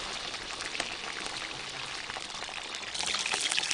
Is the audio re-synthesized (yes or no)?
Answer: no